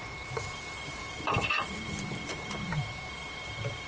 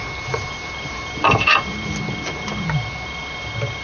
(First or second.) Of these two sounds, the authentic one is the second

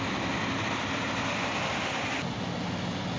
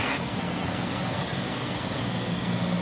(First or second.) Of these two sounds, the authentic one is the first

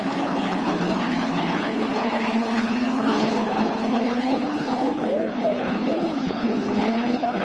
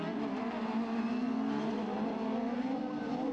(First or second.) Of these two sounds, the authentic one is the second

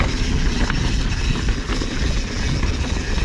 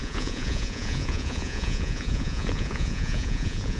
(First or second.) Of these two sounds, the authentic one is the first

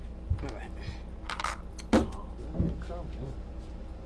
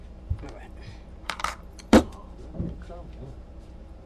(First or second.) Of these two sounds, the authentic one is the first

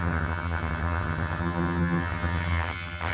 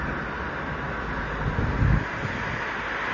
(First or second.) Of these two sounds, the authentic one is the second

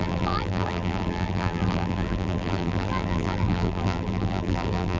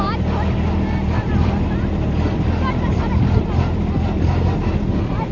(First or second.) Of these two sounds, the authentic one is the second